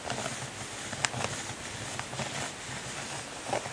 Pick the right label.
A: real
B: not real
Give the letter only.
A